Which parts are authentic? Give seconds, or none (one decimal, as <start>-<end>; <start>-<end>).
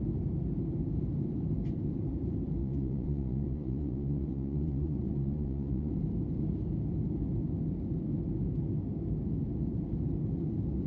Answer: 0.0-2.6; 5.9-10.9